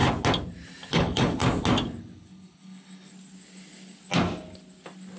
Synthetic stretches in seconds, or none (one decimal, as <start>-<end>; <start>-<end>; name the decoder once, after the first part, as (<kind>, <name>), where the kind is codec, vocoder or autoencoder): 0.9-1.4 (codec, HILCodec); 2.0-3.1